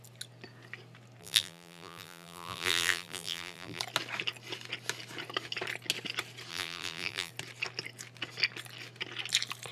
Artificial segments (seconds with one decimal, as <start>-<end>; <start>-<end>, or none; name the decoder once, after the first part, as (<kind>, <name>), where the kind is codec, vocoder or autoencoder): 1.2-3.8 (vocoder, BigVGAN v2); 6.5-7.3